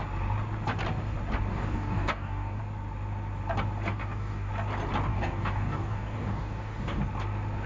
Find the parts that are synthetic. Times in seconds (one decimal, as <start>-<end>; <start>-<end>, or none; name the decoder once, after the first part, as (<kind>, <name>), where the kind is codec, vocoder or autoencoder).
1.5-2.6 (codec, DAC); 3.9-4.5; 5.1-7.0